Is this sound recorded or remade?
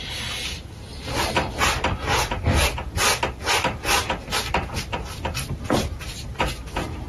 recorded